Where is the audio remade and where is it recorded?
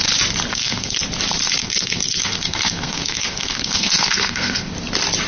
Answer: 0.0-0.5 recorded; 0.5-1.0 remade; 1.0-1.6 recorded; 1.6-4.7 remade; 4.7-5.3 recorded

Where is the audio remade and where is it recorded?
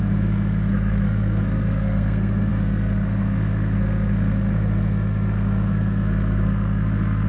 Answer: 0.0-7.3 remade